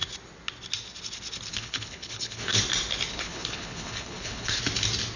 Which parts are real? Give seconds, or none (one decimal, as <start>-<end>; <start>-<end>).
0.0-1.5; 2.6-3.1; 4.6-5.2